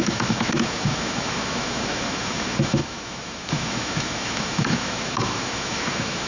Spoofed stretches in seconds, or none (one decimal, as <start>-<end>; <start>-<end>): 0.0-6.3